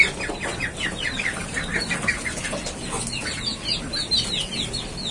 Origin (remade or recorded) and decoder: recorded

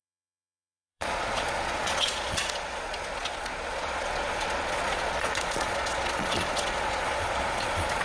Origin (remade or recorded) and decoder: remade, vocoder, Vocos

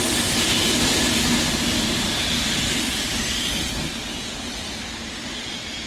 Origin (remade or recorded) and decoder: recorded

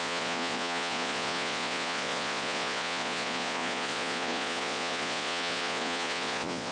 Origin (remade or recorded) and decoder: remade, vocoder, Vocos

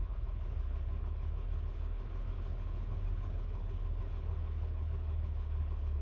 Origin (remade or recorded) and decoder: remade, codec, HILCodec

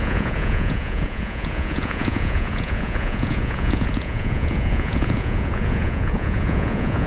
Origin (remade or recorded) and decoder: remade, vocoder, Vocos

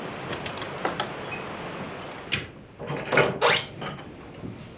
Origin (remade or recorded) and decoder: recorded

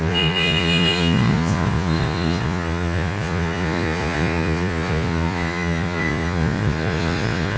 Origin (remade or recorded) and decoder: remade, vocoder, Vocos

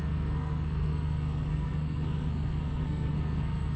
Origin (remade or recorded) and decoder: remade, codec, SNAC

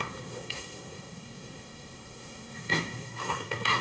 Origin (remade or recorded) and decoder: remade, codec, SNAC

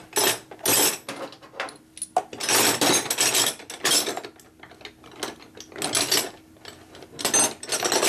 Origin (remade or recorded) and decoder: recorded